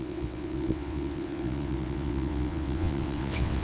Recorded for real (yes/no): no